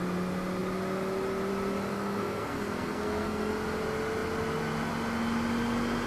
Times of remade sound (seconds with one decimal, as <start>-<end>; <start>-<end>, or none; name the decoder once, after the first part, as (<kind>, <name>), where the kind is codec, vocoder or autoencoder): 1.9-3.5 (codec, SNAC)